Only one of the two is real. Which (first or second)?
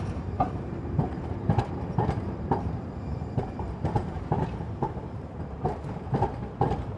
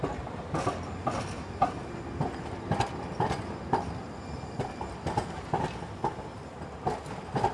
second